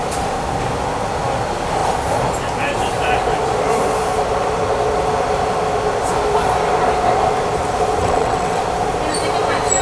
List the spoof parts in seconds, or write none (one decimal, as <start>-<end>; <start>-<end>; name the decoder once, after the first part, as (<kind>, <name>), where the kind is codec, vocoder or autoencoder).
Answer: 8.0-8.6 (vocoder, WaveNeXt)